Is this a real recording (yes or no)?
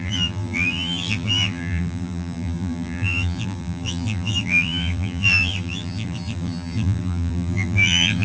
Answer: no